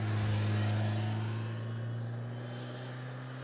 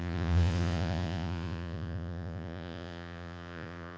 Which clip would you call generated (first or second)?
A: second